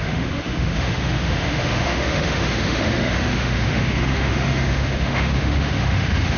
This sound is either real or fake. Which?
fake